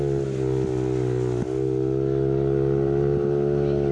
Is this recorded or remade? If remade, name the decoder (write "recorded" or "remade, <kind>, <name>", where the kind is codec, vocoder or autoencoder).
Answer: recorded